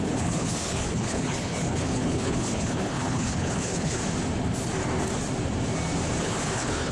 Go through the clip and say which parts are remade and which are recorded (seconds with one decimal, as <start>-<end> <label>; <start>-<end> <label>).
0.0-4.0 remade; 4.0-6.2 recorded; 6.2-6.9 remade